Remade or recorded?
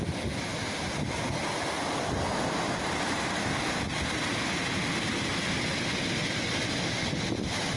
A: recorded